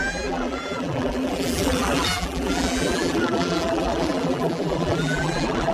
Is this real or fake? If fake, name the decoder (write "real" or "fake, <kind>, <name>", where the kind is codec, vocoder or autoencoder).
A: fake, vocoder, BigVGAN v2